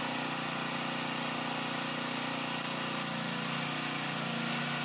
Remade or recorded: recorded